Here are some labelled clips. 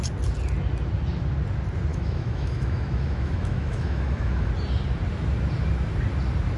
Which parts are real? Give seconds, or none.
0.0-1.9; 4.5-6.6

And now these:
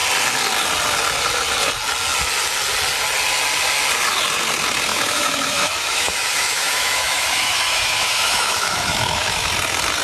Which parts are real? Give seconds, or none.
0.0-4.9; 9.5-10.0

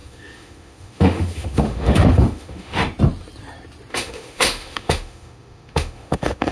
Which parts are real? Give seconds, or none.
2.8-3.9

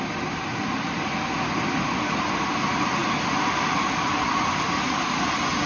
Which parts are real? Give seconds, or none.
0.0-5.7

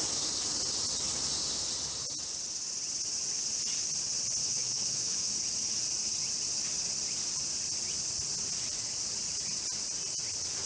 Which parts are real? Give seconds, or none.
0.0-4.4; 5.3-10.7

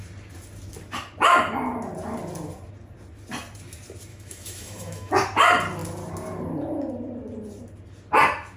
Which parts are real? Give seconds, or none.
0.0-4.1; 5.1-8.6